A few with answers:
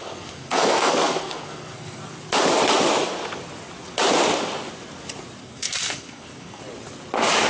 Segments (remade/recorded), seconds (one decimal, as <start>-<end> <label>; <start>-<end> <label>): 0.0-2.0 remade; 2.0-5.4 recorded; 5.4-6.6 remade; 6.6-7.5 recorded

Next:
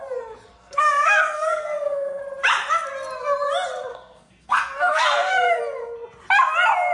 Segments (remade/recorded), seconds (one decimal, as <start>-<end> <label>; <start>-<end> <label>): 0.0-0.5 recorded; 0.5-2.2 remade; 2.2-3.9 recorded; 3.9-5.6 remade; 5.6-6.9 recorded

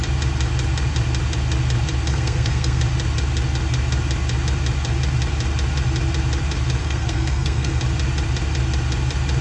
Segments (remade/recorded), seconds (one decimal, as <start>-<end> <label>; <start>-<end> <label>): 0.0-2.1 recorded; 2.1-2.8 remade; 2.8-6.8 recorded; 6.8-7.8 remade; 7.8-9.4 recorded

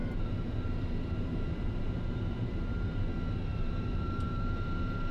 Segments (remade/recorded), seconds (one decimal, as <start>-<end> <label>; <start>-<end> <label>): 0.0-3.1 remade; 3.1-3.5 recorded; 3.5-5.1 remade

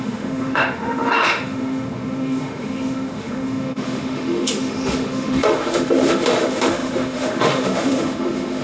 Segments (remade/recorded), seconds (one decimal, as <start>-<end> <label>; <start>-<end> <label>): 0.0-8.6 remade

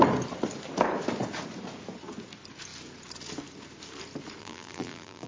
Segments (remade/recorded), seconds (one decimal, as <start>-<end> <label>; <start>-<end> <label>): 0.0-4.4 recorded; 4.4-5.3 remade

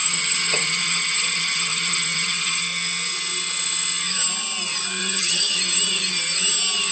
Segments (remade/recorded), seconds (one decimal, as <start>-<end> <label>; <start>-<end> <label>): 0.0-2.6 remade; 2.6-5.0 recorded; 5.0-5.6 remade; 5.6-6.9 recorded

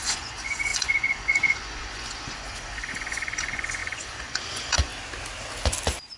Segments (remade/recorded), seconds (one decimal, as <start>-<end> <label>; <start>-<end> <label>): 0.0-4.9 remade; 4.9-6.2 recorded